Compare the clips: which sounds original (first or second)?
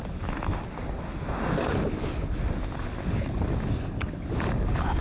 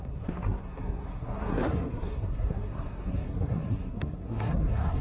first